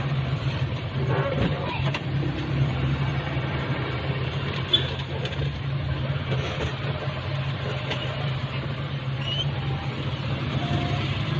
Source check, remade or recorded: remade